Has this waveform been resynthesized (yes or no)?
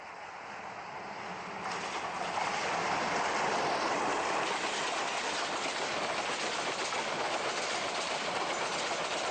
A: no